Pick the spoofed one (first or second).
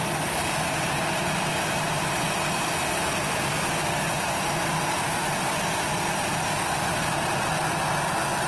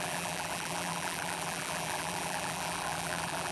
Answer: second